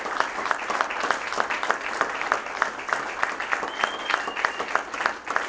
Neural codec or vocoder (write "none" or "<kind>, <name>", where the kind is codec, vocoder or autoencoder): none